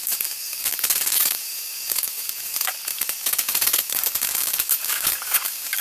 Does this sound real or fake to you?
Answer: fake